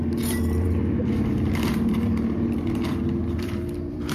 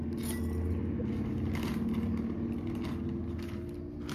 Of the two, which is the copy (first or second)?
first